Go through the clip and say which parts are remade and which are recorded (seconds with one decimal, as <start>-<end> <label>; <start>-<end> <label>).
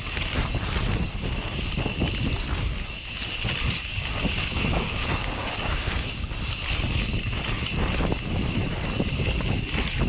0.0-3.9 recorded; 3.9-6.3 remade; 6.3-10.1 recorded